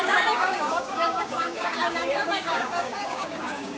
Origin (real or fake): fake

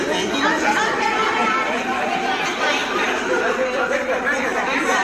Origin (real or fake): real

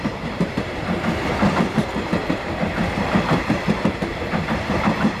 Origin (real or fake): fake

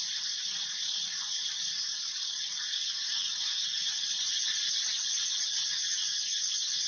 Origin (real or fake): real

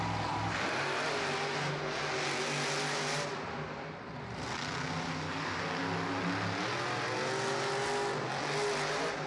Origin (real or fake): real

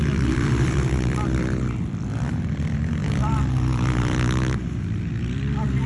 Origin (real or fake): fake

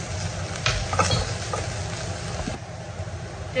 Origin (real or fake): real